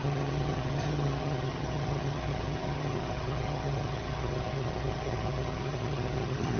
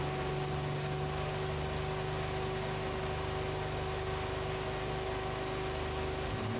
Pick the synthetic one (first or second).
first